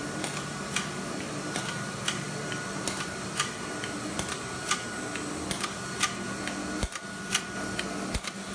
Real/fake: real